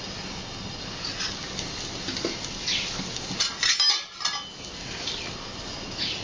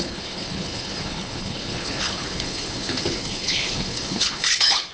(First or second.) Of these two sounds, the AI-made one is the second